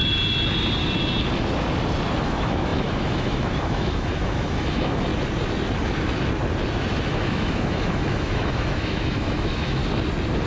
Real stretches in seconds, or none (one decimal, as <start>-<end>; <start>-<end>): 0.0-2.2; 5.1-7.1; 9.8-10.5